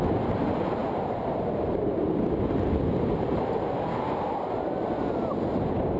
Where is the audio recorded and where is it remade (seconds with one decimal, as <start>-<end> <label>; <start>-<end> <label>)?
0.0-6.0 recorded